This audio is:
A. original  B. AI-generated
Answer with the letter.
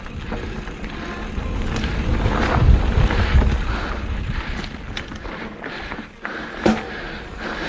A